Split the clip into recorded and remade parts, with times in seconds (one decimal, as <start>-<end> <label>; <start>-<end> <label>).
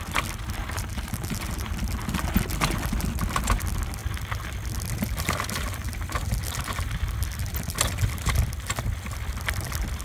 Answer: 0.0-0.6 recorded; 0.6-1.7 remade; 1.7-10.0 recorded